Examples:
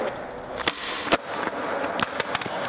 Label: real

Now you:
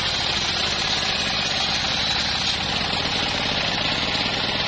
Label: real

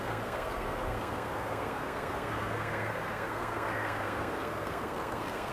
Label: fake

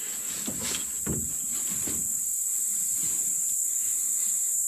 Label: real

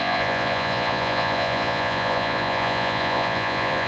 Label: fake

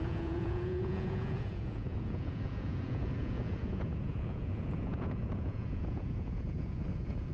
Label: fake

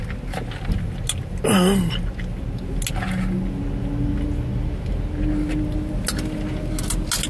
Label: real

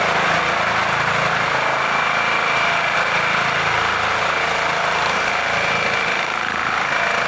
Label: real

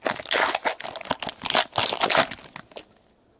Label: real